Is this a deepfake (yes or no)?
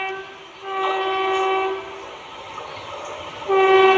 no